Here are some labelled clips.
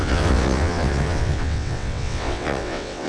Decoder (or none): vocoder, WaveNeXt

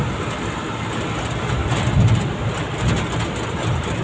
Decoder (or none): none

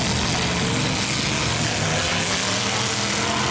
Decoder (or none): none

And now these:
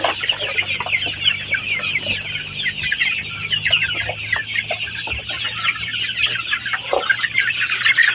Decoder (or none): none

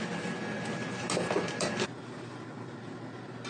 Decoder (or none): none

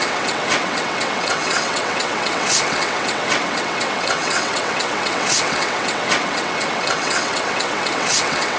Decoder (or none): vocoder, WaveNeXt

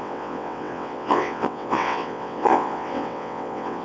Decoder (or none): vocoder, WaveNeXt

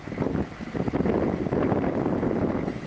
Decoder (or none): none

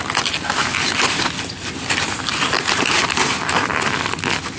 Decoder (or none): none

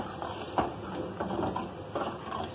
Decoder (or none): none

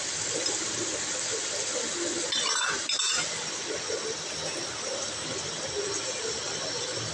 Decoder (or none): none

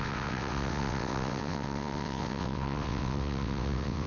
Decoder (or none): vocoder, WaveNeXt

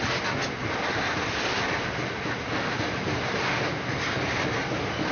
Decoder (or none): none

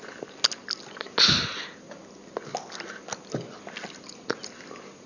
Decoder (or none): none